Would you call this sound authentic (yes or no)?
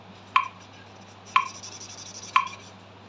yes